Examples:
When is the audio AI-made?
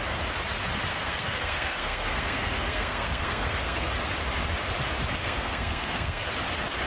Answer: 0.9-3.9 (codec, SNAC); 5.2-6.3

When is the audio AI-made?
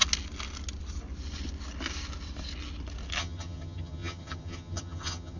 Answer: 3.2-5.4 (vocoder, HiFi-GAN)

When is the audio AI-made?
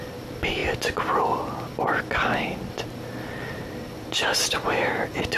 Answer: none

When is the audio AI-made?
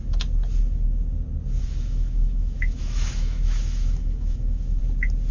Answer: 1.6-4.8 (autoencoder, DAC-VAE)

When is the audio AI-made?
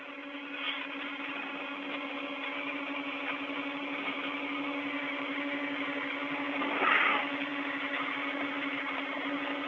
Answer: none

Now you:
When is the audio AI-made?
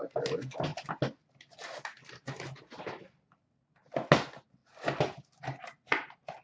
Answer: none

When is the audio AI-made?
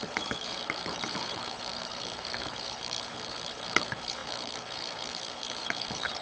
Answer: 0.0-6.2 (codec, HILCodec)